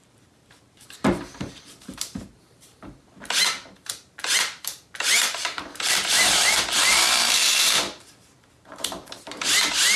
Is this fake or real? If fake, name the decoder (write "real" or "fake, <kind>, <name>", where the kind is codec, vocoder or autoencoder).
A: fake, vocoder, BigVGAN v2